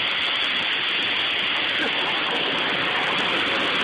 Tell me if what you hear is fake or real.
real